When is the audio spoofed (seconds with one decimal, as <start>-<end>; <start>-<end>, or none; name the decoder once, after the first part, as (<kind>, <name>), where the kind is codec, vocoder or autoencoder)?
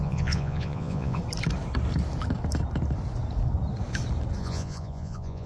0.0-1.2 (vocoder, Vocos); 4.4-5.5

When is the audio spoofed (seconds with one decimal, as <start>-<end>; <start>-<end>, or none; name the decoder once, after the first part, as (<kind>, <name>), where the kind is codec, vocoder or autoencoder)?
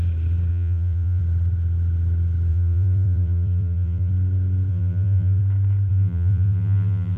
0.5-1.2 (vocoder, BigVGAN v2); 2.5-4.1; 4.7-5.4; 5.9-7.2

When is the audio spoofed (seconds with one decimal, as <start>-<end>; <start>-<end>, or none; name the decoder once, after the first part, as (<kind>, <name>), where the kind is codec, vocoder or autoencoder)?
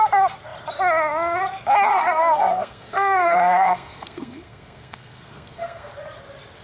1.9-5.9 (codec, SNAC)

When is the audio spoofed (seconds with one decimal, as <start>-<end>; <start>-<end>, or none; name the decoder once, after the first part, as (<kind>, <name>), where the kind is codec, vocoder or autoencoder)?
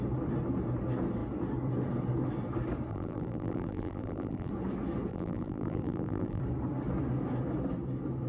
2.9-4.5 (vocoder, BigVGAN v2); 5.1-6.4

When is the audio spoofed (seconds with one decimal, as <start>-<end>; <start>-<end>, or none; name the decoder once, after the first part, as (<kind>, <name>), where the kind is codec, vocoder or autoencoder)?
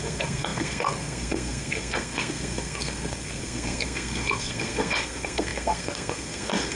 0.0-6.7 (codec, SNAC)